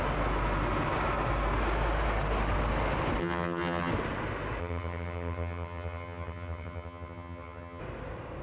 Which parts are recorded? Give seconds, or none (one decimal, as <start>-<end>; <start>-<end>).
0.0-3.2; 3.9-4.6; 7.8-8.4